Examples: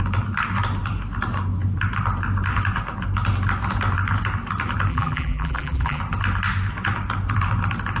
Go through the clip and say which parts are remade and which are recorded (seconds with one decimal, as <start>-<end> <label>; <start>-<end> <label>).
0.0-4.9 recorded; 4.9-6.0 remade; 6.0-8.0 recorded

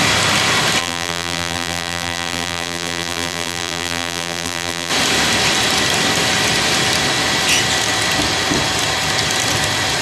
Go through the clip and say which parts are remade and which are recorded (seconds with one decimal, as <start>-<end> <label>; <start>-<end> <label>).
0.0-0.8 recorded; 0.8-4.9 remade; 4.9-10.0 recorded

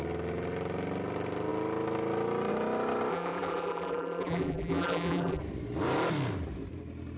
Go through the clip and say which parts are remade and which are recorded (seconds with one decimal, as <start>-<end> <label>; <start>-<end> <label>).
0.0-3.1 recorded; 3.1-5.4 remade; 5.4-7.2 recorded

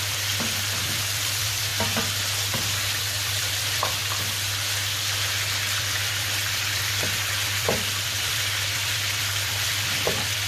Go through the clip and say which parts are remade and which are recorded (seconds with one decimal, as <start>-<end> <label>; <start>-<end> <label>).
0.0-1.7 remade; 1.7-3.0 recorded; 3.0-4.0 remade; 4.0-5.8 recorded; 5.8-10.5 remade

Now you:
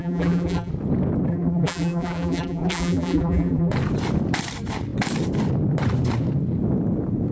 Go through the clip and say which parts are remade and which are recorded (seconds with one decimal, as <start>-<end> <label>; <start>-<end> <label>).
0.0-0.7 remade; 0.7-1.3 recorded; 1.3-3.7 remade; 3.7-7.3 recorded

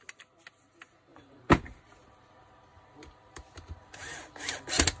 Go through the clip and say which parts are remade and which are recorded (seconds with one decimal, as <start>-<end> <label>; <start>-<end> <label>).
0.0-1.1 recorded; 1.1-1.8 remade; 1.8-2.7 recorded; 2.7-4.6 remade; 4.6-5.0 recorded